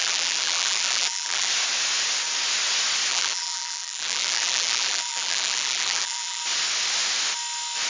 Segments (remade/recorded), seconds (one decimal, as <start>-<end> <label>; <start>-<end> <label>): 0.0-1.5 remade; 1.5-3.1 recorded; 3.1-6.4 remade; 6.4-7.9 recorded